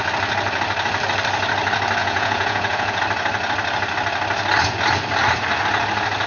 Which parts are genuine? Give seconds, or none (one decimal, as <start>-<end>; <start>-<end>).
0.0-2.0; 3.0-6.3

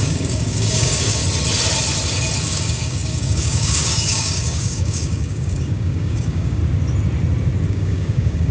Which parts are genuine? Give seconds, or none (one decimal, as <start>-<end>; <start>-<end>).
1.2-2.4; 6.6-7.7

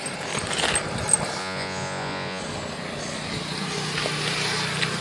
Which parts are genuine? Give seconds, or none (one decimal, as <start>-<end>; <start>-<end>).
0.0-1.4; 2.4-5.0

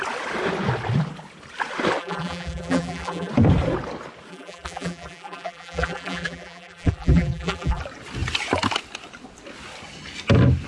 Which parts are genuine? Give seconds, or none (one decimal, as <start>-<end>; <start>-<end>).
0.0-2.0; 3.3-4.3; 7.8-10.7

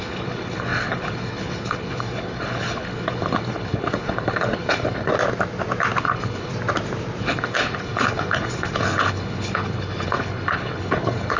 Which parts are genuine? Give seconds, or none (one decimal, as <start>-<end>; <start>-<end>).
5.1-6.0; 6.5-7.2

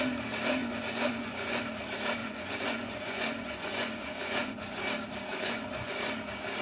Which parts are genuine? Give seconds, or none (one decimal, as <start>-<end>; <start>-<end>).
0.0-0.6; 1.6-2.2; 4.8-5.3; 5.9-6.6

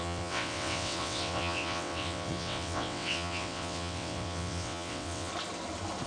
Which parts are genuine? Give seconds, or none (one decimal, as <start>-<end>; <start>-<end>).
5.3-6.1